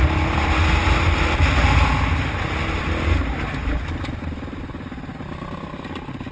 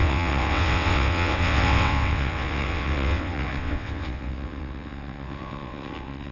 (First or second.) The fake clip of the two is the second